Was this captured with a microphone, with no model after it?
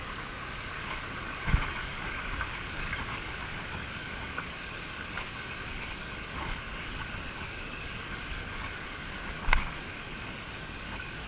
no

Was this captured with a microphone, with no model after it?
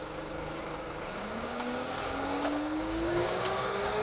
no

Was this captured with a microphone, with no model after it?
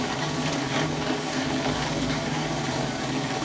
no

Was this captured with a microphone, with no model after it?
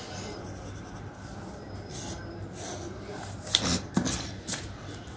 yes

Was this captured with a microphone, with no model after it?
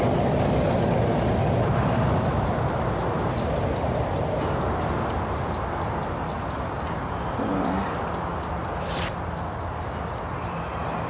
yes